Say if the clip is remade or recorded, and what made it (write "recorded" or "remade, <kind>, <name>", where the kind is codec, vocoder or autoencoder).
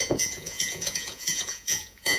remade, vocoder, Vocos